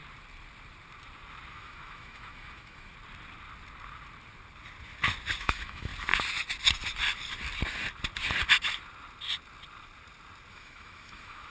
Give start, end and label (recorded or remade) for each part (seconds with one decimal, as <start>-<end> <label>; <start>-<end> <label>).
0.0-1.5 recorded; 1.5-2.9 remade; 2.9-5.4 recorded; 5.4-5.9 remade; 5.9-10.5 recorded; 10.5-11.5 remade

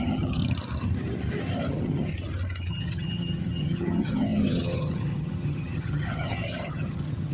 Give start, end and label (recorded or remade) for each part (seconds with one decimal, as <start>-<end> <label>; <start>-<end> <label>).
0.0-0.4 remade; 0.4-1.7 recorded; 1.7-2.1 remade; 2.1-2.7 recorded; 2.7-7.3 remade